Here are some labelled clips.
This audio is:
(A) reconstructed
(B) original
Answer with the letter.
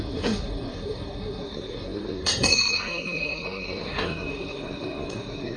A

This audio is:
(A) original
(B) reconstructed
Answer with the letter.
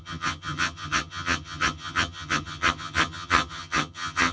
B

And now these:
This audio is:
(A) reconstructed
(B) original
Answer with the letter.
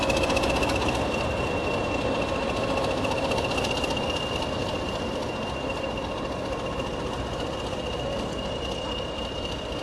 A